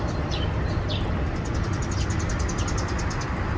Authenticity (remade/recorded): recorded